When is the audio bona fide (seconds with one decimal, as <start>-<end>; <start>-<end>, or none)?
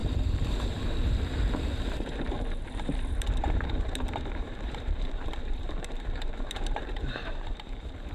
none